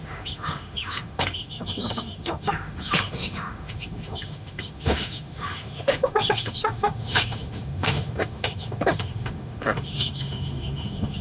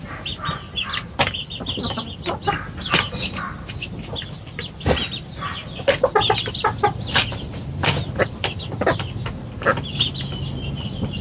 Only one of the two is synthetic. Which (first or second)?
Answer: first